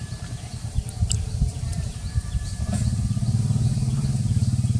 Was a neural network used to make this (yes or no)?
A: yes